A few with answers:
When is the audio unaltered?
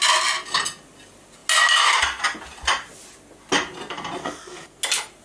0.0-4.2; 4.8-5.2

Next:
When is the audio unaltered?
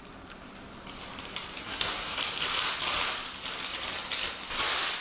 0.0-1.6; 2.2-5.0